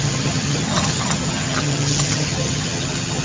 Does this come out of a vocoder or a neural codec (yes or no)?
yes